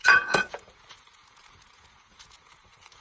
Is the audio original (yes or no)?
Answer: no